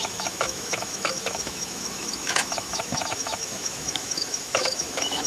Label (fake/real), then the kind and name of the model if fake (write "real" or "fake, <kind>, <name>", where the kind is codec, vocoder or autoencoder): fake, autoencoder, DAC-VAE